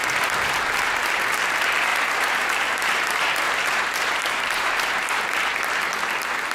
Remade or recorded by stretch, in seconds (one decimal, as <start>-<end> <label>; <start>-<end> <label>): 0.0-1.9 recorded; 1.9-5.1 remade; 5.1-6.5 recorded